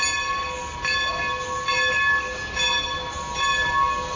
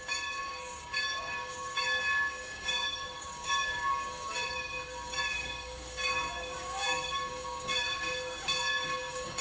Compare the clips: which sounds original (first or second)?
first